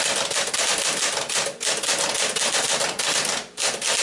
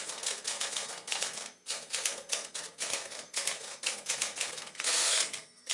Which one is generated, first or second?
second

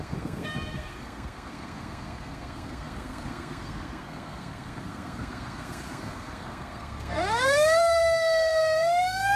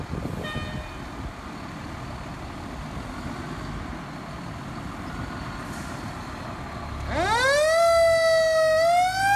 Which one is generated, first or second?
first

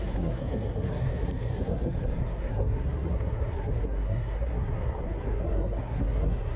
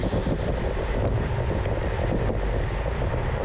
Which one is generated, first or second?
first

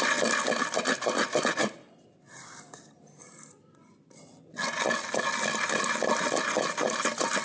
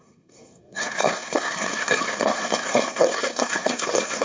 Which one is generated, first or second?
second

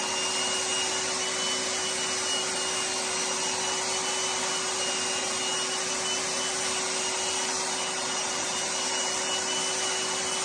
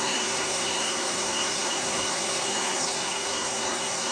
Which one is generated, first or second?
second